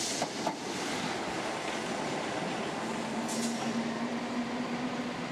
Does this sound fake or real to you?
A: real